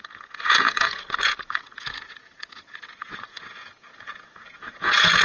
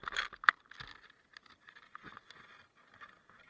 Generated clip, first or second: first